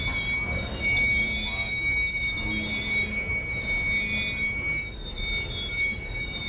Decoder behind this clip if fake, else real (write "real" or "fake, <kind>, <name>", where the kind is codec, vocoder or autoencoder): real